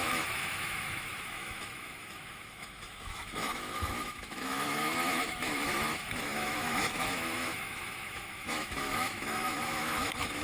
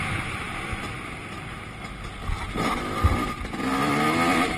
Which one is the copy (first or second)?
first